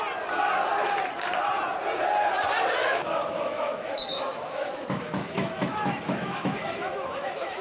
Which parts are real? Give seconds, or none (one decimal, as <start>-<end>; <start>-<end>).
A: 0.0-2.8

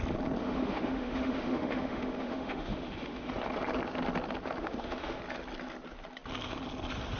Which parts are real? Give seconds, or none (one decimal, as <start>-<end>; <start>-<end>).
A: 0.0-0.4; 3.3-4.6; 5.2-7.2

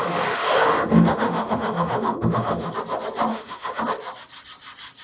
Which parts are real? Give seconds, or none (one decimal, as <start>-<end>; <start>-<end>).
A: 2.7-3.3; 3.8-5.0

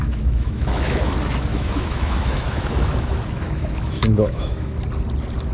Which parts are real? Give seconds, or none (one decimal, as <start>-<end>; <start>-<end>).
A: 1.0-1.5; 4.8-5.5